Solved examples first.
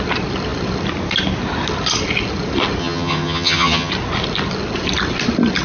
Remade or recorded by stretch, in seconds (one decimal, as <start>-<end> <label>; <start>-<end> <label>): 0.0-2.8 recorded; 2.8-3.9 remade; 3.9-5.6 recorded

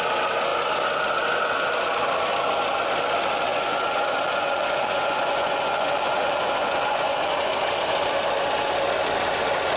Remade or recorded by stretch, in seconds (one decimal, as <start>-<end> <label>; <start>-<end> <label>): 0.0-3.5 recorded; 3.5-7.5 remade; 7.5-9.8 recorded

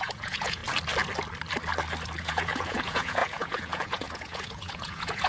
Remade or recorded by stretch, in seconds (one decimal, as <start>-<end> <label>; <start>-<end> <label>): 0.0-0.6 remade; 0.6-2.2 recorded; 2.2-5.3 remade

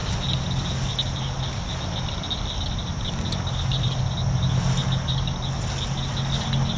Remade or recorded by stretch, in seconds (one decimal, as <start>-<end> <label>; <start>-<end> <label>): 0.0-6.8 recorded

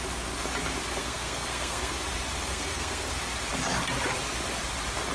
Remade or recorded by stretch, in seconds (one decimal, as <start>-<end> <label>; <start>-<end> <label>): 0.0-1.0 recorded; 1.0-1.9 remade; 1.9-2.5 recorded; 2.5-3.1 remade; 3.1-5.1 recorded

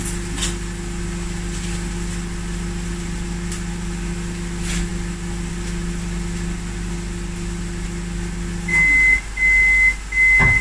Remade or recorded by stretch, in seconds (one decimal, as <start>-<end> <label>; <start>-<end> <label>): 0.0-10.6 recorded

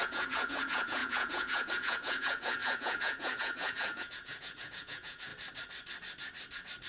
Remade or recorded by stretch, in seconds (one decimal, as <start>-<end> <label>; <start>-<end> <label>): 0.0-5.3 remade; 5.3-6.9 recorded

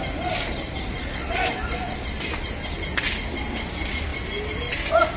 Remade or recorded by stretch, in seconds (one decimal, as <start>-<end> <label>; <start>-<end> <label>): 0.0-5.2 recorded